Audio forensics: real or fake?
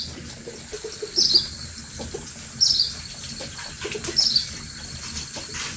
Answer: real